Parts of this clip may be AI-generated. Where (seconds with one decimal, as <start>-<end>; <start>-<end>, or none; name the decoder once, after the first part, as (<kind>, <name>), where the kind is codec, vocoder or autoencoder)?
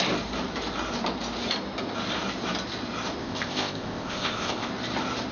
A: 3.2-4.7 (codec, ZipCodec)